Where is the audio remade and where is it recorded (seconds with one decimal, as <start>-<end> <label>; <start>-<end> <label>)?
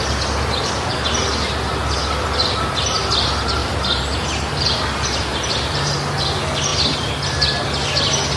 0.0-3.6 recorded; 3.6-4.5 remade; 4.5-5.3 recorded; 5.3-5.9 remade; 5.9-8.4 recorded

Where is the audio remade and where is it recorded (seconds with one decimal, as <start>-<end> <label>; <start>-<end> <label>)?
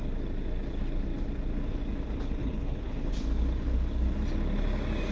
0.0-2.4 recorded; 2.4-3.1 remade; 3.1-5.1 recorded